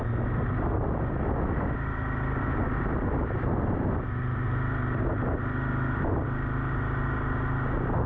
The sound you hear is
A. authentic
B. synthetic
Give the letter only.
A